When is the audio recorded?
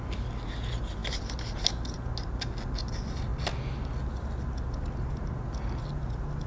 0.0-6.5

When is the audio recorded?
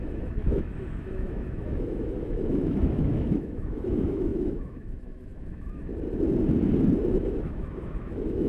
5.9-7.1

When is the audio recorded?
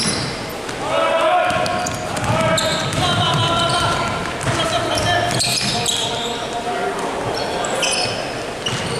0.0-9.0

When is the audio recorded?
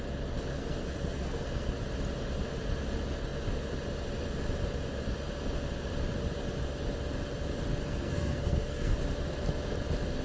0.0-0.5; 1.7-7.8; 9.0-10.2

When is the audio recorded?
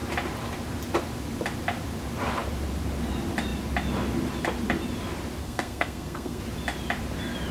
0.0-5.4; 6.4-7.5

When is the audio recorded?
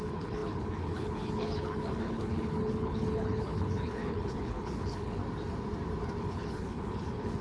5.2-6.2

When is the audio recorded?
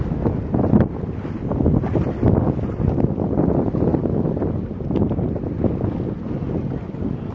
0.0-7.3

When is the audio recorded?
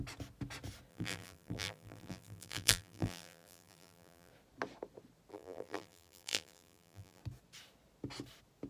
0.0-0.9; 4.3-5.3; 7.2-8.7